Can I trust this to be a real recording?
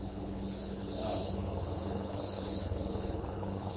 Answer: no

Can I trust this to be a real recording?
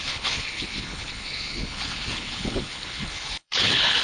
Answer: no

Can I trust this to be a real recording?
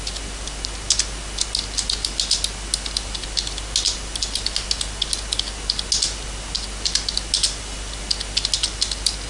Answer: yes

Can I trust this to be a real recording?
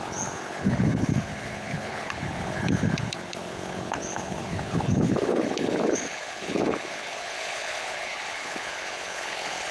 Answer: no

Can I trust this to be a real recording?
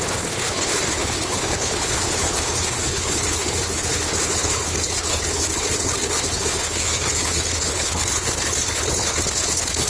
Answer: no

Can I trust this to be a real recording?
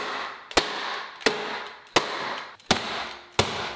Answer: yes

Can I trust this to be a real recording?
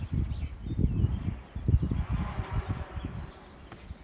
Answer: yes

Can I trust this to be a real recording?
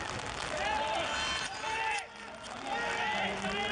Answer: yes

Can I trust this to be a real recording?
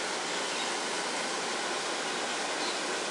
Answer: yes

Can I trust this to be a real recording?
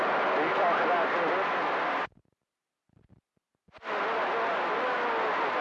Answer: yes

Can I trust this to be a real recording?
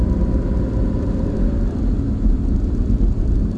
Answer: yes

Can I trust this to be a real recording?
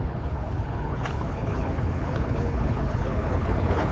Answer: no